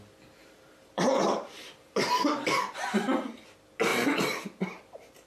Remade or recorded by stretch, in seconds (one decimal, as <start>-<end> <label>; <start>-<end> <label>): 0.0-0.4 recorded; 0.4-2.5 remade; 2.5-5.3 recorded